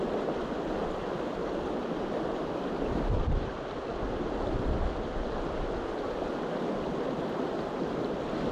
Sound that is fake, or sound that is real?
real